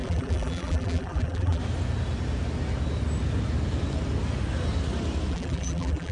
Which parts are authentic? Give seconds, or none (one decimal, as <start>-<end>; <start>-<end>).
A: 1.6-5.3